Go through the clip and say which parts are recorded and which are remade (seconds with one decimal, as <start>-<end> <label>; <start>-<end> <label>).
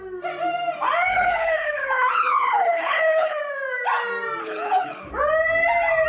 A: 0.0-1.1 recorded; 1.1-3.4 remade; 3.4-4.4 recorded; 4.4-5.1 remade; 5.1-6.1 recorded